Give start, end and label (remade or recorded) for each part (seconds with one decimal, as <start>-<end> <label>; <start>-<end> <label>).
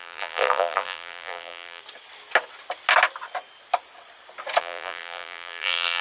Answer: 0.0-1.8 remade; 1.8-4.6 recorded; 4.6-6.0 remade